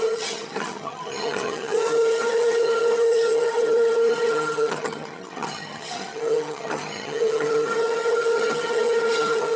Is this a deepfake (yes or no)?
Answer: yes